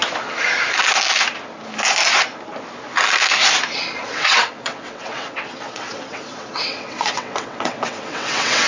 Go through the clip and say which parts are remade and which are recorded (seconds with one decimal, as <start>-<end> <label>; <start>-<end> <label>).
0.0-4.0 recorded; 4.0-8.7 remade